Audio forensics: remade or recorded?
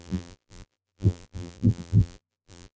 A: remade